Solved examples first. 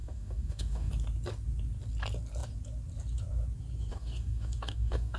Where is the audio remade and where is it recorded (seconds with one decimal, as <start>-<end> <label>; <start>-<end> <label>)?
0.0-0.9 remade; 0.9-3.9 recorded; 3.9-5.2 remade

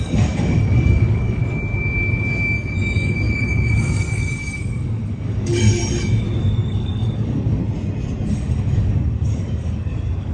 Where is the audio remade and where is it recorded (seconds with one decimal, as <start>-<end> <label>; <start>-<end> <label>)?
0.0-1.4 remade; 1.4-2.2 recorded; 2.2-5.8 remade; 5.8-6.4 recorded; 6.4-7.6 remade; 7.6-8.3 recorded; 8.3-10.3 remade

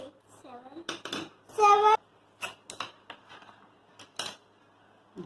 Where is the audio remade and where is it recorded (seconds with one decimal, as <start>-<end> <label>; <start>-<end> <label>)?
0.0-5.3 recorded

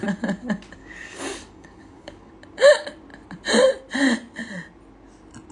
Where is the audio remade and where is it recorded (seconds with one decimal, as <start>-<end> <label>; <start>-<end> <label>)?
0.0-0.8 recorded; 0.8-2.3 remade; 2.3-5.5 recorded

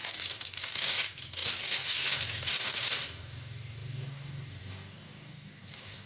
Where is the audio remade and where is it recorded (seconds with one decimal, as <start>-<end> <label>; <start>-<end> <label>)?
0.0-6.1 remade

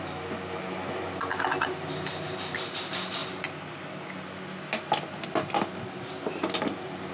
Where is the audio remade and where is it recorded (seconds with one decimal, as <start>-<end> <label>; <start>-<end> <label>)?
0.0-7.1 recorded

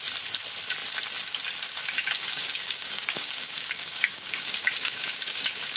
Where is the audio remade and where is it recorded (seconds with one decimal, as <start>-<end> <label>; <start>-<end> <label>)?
0.0-2.0 recorded; 2.0-5.8 remade